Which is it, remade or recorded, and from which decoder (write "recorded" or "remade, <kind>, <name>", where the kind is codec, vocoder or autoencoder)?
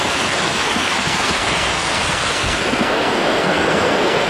remade, codec, SNAC